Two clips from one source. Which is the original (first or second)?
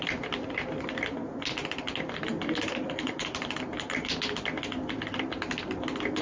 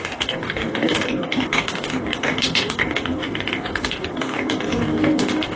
first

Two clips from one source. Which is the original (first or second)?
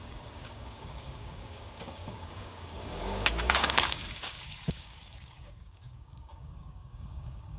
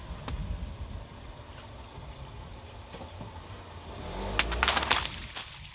second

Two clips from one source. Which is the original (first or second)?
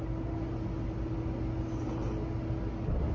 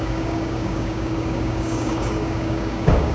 first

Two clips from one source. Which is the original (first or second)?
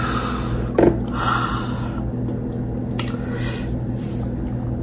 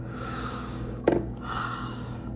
first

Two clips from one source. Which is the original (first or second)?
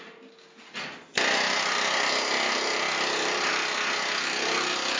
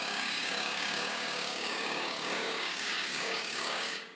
first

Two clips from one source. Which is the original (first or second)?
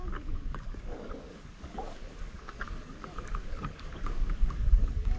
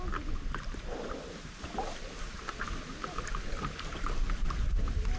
second